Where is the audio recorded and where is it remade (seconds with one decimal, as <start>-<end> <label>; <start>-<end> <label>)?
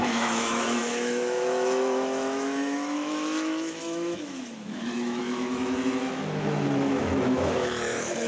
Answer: 0.0-8.3 remade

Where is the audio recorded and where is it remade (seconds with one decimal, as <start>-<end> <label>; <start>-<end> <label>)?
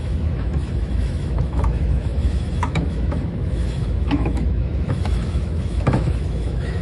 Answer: 0.0-6.8 remade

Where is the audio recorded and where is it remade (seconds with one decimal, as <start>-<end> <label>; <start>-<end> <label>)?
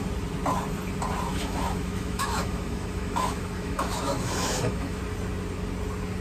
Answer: 0.0-1.3 recorded; 1.3-5.0 remade; 5.0-6.2 recorded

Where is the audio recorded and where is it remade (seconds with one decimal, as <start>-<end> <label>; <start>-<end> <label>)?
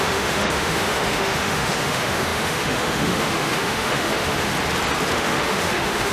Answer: 0.0-4.5 remade; 4.5-5.1 recorded; 5.1-6.1 remade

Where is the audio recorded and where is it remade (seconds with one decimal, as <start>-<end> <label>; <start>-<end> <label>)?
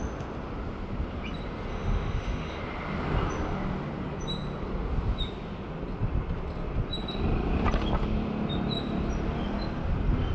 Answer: 0.0-1.7 recorded; 1.7-2.6 remade; 2.6-10.3 recorded